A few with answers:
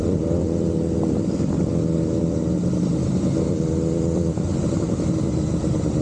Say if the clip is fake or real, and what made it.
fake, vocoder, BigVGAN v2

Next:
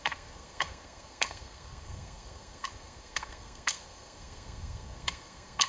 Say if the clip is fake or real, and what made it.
fake, codec, SNAC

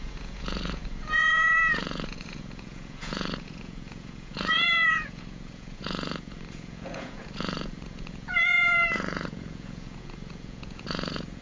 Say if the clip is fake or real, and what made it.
fake, vocoder, Vocos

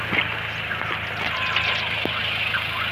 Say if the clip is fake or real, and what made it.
real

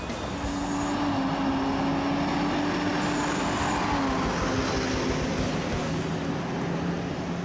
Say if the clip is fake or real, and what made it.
real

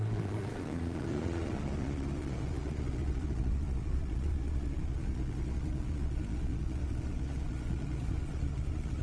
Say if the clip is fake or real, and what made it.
fake, vocoder, Vocos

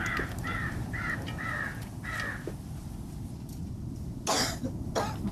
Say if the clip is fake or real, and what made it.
real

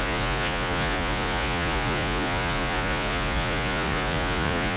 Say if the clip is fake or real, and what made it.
fake, vocoder, Vocos